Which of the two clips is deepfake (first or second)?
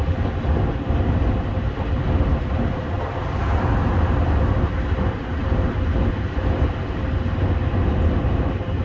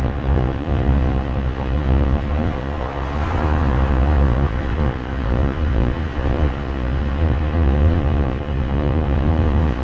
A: second